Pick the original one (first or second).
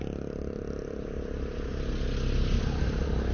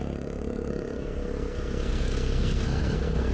first